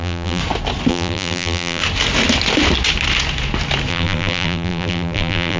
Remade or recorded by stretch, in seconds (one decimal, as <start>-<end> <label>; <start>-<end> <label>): 0.0-0.4 remade; 0.4-0.9 recorded; 0.9-1.8 remade; 1.8-3.9 recorded; 3.9-5.6 remade